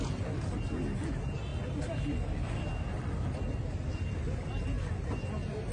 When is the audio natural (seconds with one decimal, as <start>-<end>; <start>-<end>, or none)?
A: 0.0-5.7

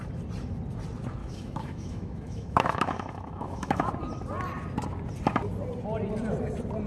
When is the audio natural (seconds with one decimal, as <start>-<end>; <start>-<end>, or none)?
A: 0.0-1.2; 3.9-6.9

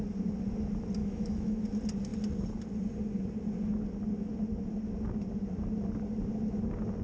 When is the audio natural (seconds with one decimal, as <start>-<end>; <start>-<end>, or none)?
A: 0.0-1.0; 1.6-7.0